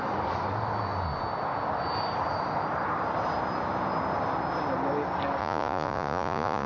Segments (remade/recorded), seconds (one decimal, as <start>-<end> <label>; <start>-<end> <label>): 0.0-5.4 recorded; 5.4-6.7 remade